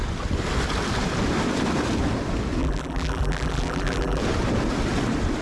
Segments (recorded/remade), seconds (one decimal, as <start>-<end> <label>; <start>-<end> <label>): 0.0-2.6 recorded; 2.6-4.2 remade; 4.2-5.4 recorded